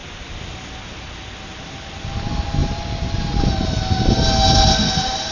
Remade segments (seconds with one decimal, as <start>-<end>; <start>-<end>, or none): 2.6-3.8